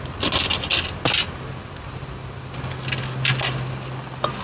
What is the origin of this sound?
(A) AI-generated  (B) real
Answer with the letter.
B